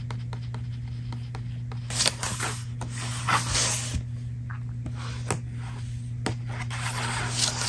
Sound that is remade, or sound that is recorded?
recorded